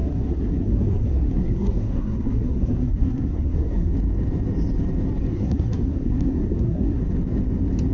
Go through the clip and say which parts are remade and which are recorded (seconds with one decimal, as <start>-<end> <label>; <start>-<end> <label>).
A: 0.0-3.9 remade; 3.9-5.3 recorded; 5.3-7.0 remade; 7.0-7.9 recorded